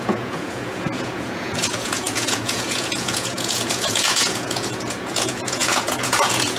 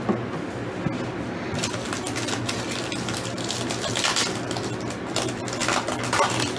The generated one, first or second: first